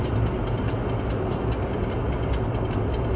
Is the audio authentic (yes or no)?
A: yes